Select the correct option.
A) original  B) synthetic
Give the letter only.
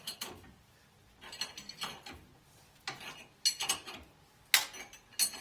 A